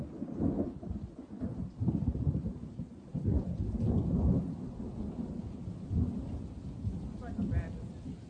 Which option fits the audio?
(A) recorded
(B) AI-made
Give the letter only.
A